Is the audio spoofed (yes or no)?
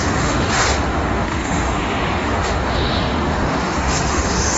yes